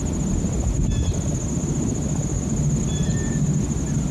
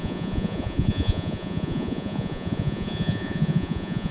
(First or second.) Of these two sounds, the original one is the first